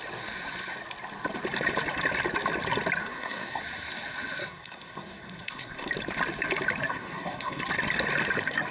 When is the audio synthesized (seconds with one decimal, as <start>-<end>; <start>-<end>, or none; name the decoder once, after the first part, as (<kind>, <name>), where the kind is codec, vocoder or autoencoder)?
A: 3.0-3.6 (codec, SNAC); 4.4-5.9; 6.9-7.6